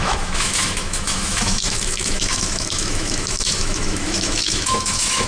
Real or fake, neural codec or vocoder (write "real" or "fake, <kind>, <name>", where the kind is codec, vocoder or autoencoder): fake, autoencoder, DAC-VAE